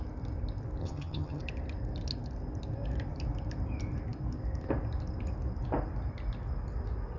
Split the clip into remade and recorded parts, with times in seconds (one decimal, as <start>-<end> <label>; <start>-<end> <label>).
0.0-0.8 recorded; 0.8-1.4 remade; 1.4-7.2 recorded